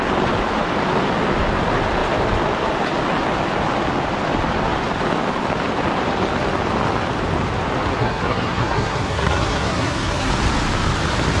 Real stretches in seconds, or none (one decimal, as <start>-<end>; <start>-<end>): 0.0-8.0; 10.3-11.4